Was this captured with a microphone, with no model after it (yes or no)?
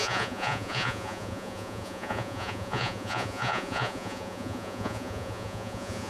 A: no